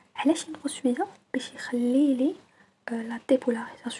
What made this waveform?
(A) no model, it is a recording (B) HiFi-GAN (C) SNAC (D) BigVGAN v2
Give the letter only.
A